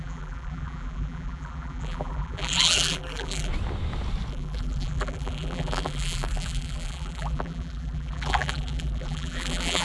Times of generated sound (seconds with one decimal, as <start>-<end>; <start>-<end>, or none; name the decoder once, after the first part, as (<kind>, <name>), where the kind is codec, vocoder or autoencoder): 0.0-3.5 (vocoder, BigVGAN v2); 4.3-9.8